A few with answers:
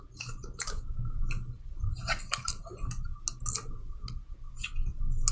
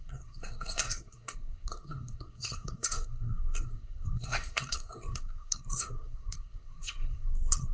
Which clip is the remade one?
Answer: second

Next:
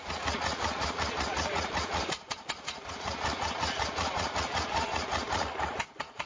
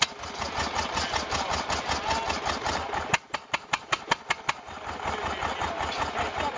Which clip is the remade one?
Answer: first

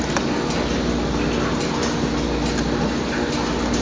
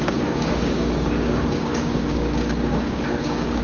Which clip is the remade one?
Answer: second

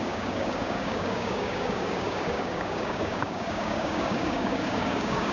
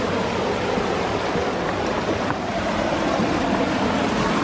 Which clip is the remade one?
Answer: first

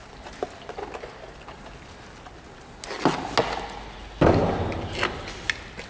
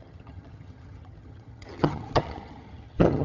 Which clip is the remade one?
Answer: second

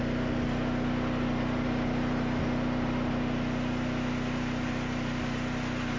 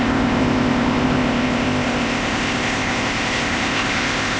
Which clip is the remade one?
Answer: second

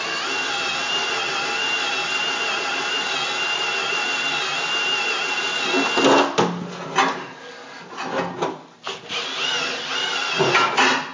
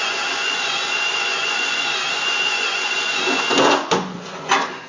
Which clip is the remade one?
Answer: second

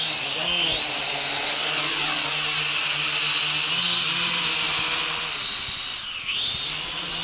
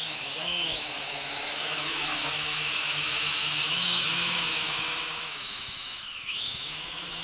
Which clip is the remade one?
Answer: second